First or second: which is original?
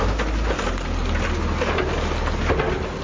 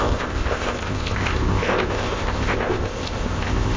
first